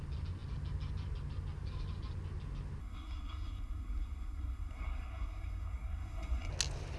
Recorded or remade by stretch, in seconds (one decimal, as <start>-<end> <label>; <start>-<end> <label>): 0.0-2.8 recorded; 2.8-6.5 remade; 6.5-7.0 recorded